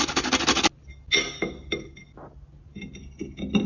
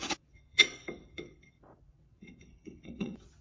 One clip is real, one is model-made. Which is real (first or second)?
first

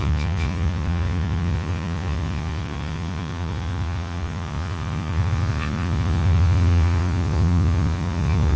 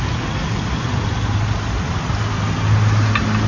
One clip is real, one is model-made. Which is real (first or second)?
second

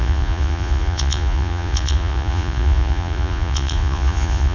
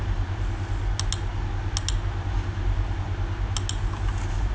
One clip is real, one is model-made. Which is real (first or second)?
second